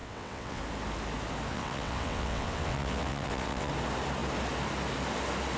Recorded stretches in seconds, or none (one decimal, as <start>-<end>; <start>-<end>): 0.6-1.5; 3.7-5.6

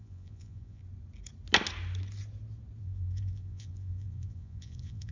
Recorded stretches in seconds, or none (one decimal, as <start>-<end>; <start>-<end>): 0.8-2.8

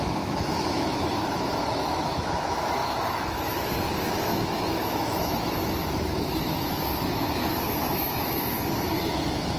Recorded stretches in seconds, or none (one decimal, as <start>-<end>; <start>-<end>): none

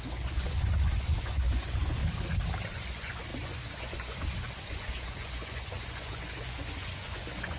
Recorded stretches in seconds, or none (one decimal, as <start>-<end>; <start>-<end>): 2.0-2.7

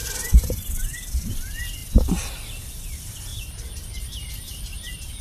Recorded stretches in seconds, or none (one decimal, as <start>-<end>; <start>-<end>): 1.3-3.3